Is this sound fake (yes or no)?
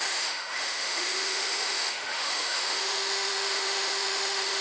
yes